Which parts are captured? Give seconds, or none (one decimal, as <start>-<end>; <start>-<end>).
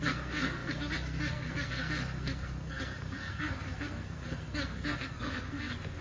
none